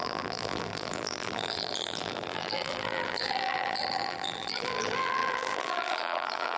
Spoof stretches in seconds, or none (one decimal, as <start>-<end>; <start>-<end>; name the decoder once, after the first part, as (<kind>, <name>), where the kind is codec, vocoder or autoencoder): 0.0-6.6 (vocoder, BigVGAN v2)